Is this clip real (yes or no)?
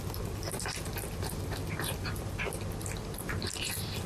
yes